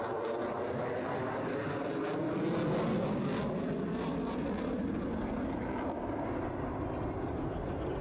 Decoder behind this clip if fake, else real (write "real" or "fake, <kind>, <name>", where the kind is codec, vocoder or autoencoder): real